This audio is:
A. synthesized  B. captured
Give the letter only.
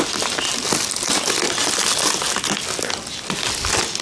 B